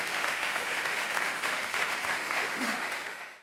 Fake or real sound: fake